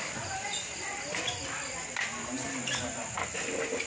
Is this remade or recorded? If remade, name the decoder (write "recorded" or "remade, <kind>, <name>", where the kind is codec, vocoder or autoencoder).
recorded